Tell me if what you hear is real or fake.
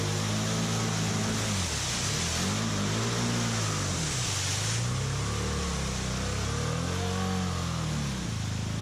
real